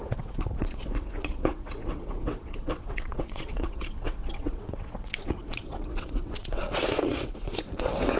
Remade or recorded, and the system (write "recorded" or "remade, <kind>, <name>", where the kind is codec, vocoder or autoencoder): remade, vocoder, WaveNeXt